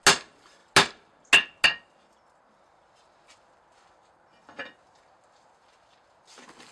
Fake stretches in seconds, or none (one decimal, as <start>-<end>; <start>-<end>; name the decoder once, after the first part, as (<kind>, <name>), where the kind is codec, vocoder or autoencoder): none